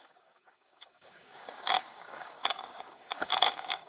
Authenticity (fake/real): fake